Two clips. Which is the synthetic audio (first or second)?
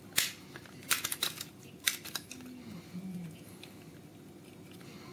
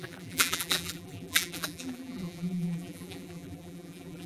second